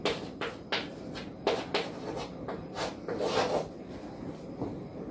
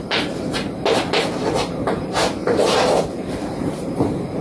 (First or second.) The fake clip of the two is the second